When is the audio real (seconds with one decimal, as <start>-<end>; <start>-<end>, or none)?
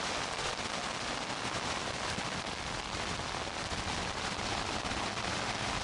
0.5-4.0